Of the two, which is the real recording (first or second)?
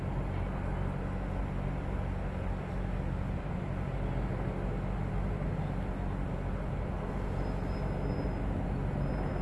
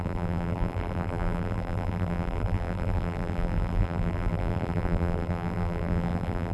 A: first